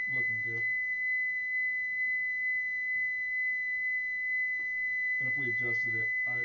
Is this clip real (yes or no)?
yes